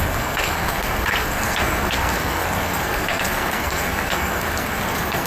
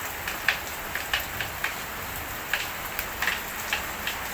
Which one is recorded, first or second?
second